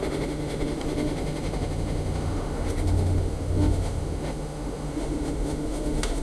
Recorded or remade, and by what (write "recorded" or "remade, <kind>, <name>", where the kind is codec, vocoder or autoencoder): remade, autoencoder, DAC-VAE